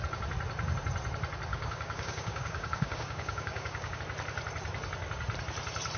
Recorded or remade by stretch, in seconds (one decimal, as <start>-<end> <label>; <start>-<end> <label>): 0.0-1.5 recorded; 1.5-4.0 remade; 4.0-6.0 recorded